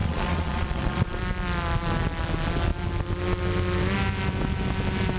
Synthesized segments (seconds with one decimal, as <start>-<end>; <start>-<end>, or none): 0.0-1.2